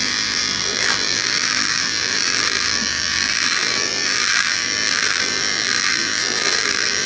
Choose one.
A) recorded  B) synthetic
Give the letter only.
B